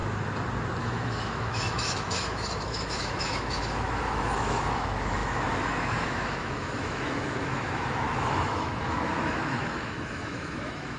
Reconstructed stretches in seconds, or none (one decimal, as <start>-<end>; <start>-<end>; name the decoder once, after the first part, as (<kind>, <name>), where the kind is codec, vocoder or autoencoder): 0.8-11.0 (autoencoder, DAC-VAE)